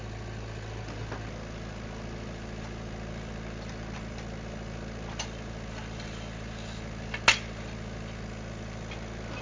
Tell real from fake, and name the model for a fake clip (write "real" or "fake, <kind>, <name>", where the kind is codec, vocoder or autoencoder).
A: real